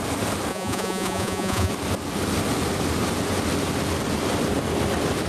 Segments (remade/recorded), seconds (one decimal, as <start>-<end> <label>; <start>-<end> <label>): 0.0-0.5 recorded; 0.5-1.7 remade; 1.7-5.3 recorded